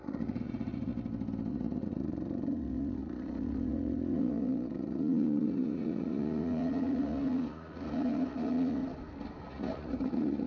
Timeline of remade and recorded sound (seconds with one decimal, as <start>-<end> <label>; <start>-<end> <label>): 0.0-0.9 remade; 0.9-1.5 recorded; 1.5-8.8 remade; 8.8-9.4 recorded; 9.4-10.5 remade